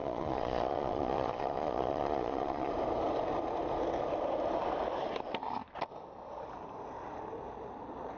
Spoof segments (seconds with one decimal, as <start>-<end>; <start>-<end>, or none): 0.0-2.7